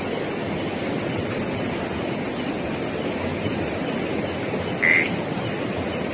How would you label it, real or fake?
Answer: real